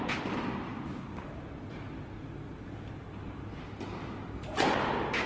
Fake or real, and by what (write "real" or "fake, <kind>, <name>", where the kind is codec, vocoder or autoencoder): real